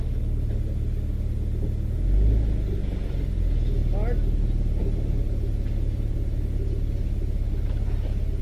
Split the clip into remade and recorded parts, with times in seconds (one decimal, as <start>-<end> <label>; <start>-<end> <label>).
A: 0.0-8.4 recorded